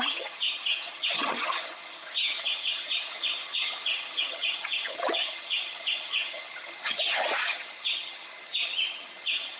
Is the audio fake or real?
fake